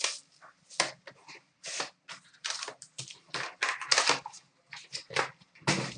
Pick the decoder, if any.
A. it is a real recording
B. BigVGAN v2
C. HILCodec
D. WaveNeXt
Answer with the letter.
A